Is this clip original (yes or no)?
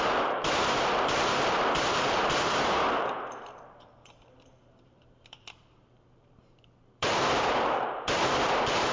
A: no